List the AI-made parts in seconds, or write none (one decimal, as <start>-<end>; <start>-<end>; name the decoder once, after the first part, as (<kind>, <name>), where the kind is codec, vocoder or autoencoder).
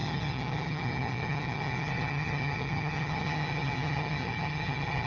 0.0-5.1 (vocoder, HiFi-GAN)